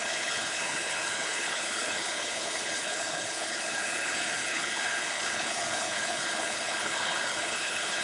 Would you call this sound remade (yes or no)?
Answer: yes